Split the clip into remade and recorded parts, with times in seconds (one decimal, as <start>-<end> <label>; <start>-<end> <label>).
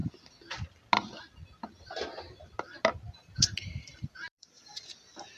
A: 0.0-3.2 recorded; 3.2-4.8 remade; 4.8-5.4 recorded